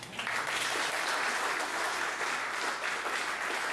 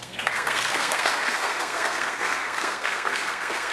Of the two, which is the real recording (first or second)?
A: first